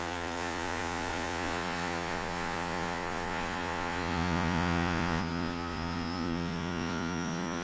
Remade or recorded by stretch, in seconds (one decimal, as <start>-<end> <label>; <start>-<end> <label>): 0.0-7.6 remade